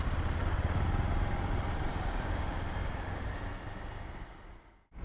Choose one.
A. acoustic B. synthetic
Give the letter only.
A